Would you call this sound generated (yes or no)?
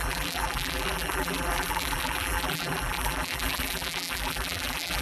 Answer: yes